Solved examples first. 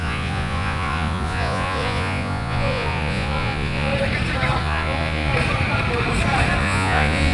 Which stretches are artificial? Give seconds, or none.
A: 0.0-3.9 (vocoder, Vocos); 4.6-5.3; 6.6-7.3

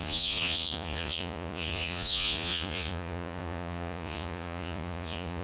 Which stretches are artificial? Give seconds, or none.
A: 0.0-5.4 (vocoder, Vocos)

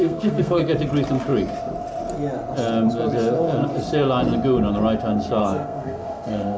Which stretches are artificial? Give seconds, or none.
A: 0.0-0.6 (codec, SNAC); 5.4-6.6

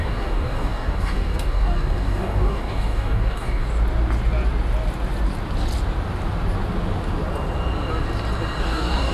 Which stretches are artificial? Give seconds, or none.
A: 0.0-3.7 (codec, DAC); 8.6-9.1

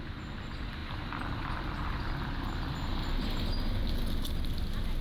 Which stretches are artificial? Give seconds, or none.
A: none